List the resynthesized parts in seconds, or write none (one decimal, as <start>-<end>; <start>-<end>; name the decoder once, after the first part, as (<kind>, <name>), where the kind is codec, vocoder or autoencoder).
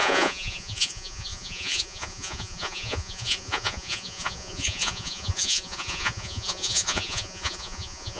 0.0-8.2 (vocoder, Vocos)